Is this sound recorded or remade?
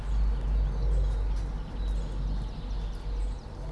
recorded